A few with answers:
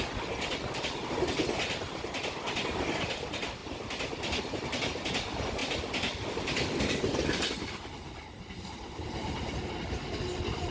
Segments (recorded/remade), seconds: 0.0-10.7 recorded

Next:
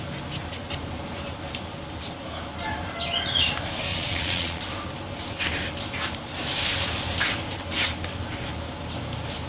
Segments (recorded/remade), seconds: 0.0-3.9 recorded; 3.9-4.6 remade; 4.6-9.5 recorded

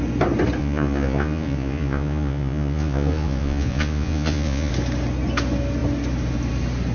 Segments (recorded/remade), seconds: 0.0-0.6 recorded; 0.6-4.7 remade; 4.7-6.9 recorded

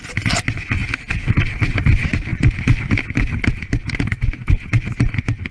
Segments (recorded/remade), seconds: 0.0-5.5 recorded

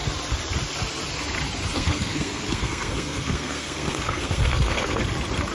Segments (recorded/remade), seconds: 0.0-1.7 recorded; 1.7-5.0 remade; 5.0-5.5 recorded

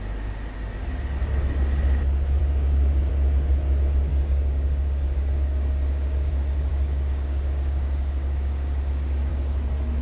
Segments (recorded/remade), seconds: 0.0-2.4 recorded; 2.4-3.1 remade; 3.1-4.1 recorded; 4.1-6.3 remade; 6.3-6.7 recorded; 6.7-9.3 remade; 9.3-10.0 recorded

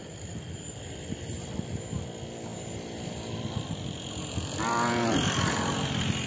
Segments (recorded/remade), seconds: 0.0-1.2 remade; 1.2-2.5 recorded; 2.5-5.6 remade; 5.6-6.3 recorded

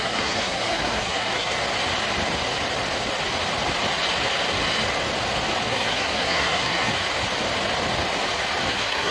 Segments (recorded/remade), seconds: 0.0-1.6 remade; 1.6-5.6 recorded; 5.6-6.9 remade; 6.9-8.7 recorded; 8.7-9.1 remade